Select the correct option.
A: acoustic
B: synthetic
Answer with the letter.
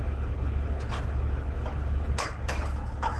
B